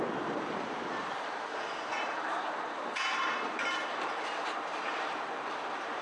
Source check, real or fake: fake